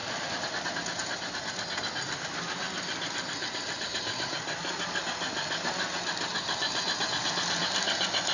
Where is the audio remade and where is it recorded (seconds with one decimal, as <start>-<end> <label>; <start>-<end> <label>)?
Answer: 0.0-8.3 recorded